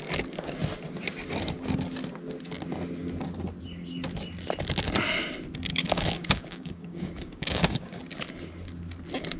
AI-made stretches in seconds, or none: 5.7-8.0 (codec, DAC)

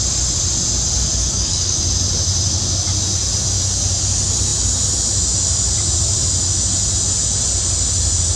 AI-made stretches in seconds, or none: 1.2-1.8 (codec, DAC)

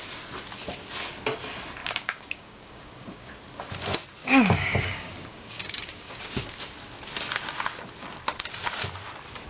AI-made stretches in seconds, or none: 1.8-3.3 (codec, DAC); 4.2-6.6

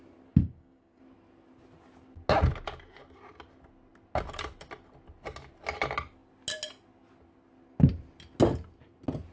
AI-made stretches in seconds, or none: 0.4-1.0 (codec, DAC)

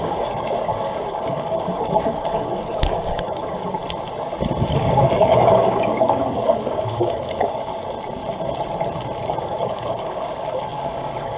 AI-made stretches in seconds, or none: 0.0-3.8 (codec, DAC); 4.8-7.7; 9.4-11.4

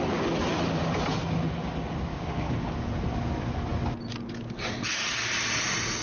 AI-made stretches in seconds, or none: 2.1-2.9 (codec, DAC)

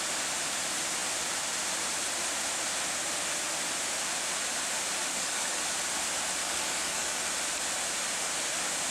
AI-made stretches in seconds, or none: 5.1-5.6 (codec, DAC); 6.4-7.2